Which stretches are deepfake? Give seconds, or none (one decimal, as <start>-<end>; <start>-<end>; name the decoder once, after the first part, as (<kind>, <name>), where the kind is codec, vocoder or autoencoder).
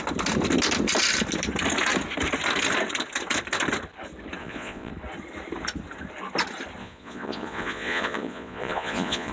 4.4-4.9 (vocoder, Vocos); 6.8-9.3